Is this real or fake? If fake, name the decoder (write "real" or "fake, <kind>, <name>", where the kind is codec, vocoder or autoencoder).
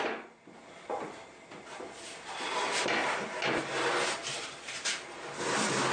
real